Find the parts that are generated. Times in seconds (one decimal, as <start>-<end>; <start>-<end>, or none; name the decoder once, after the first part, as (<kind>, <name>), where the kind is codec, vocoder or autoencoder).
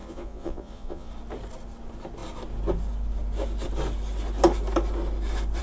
0.0-1.1 (vocoder, Vocos)